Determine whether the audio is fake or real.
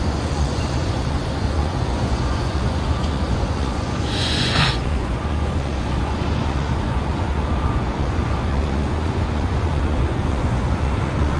fake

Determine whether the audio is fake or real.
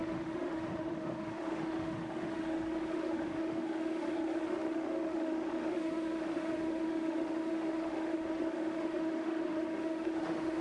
fake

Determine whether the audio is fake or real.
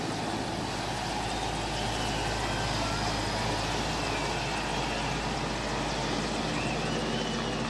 real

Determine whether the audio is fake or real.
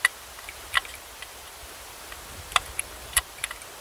fake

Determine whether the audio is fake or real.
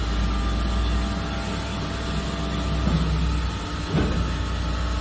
real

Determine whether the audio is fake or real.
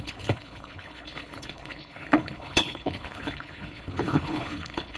fake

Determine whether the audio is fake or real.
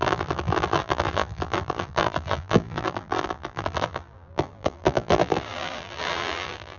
fake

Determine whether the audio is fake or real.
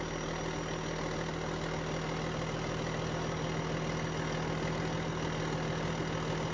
real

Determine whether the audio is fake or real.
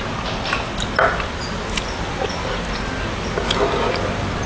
real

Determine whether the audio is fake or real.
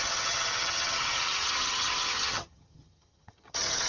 fake